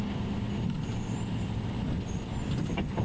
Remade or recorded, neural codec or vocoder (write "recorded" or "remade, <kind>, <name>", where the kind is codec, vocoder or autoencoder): remade, vocoder, BigVGAN v2